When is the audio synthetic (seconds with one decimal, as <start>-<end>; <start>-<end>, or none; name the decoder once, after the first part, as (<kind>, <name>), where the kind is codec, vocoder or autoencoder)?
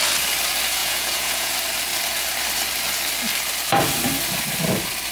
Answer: 0.8-1.5 (vocoder, Vocos)